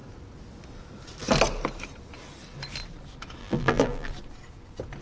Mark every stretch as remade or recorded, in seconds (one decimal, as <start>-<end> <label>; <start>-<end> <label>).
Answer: 0.0-3.4 recorded; 3.4-4.1 remade; 4.1-5.0 recorded